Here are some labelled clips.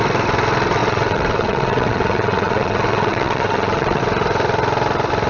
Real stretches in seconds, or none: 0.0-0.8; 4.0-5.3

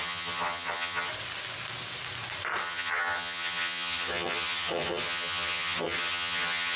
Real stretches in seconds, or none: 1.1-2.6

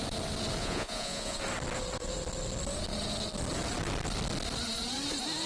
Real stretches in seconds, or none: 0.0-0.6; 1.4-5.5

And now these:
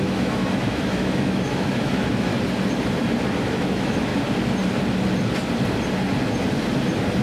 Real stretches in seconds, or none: 2.3-3.4; 4.1-7.2

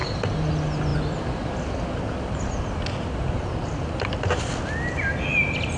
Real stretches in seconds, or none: 0.5-5.8

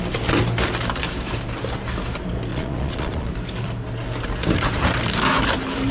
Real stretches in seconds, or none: 0.0-2.5; 3.3-5.9